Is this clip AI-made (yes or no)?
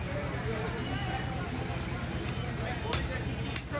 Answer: no